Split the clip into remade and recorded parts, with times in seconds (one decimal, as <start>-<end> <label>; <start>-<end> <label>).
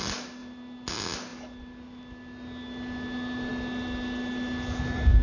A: 0.0-5.2 recorded